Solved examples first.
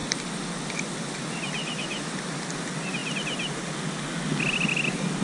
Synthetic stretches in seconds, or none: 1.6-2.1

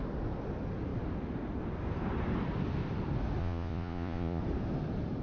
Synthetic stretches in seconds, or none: 3.4-4.4